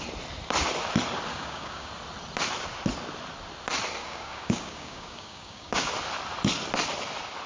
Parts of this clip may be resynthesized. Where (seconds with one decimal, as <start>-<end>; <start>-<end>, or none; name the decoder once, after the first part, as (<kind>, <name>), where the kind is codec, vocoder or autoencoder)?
1.3-1.9 (codec, DAC); 4.0-5.9